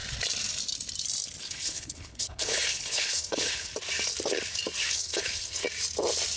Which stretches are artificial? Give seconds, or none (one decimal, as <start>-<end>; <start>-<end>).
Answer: 1.4-3.7; 4.8-5.6